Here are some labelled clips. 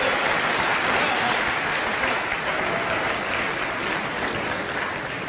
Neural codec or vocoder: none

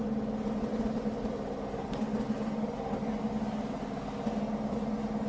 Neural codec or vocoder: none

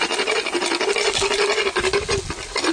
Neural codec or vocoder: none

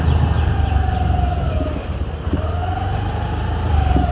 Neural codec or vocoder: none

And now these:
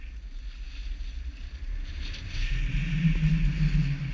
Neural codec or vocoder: none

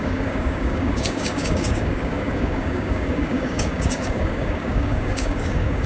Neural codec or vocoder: codec, DAC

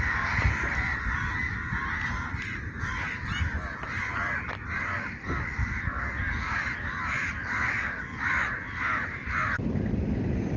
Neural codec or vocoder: vocoder, BigVGAN v2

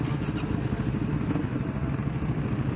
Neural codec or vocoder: none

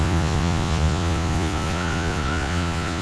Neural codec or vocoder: vocoder, Vocos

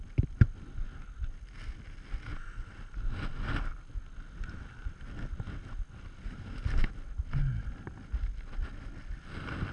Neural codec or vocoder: none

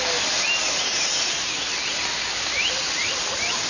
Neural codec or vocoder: none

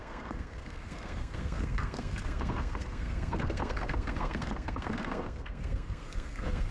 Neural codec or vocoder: codec, SNAC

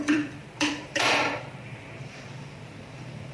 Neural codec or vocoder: vocoder, BigVGAN v2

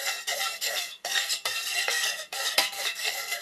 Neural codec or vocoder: codec, SNAC